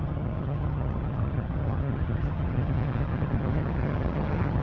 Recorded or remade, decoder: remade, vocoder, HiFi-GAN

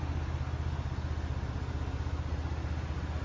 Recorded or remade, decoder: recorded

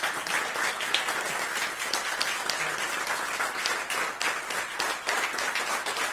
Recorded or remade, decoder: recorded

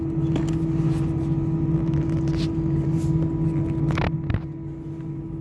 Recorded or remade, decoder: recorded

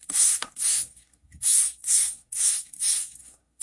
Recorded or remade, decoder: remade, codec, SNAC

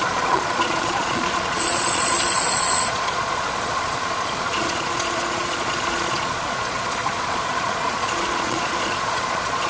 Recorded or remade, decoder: remade, vocoder, Vocos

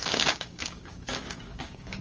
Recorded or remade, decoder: remade, codec, DAC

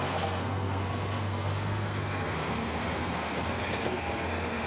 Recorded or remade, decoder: remade, codec, SNAC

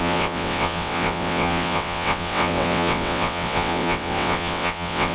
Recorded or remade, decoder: remade, vocoder, WaveNeXt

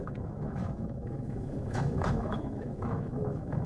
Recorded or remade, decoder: remade, autoencoder, DAC-VAE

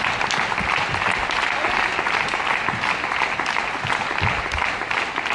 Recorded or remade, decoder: recorded